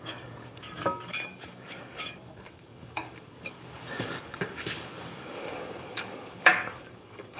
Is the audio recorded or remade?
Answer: remade